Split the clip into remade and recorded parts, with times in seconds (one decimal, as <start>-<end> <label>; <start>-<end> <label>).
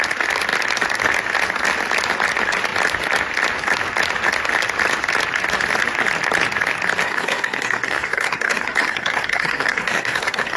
0.0-7.0 recorded; 7.0-10.6 remade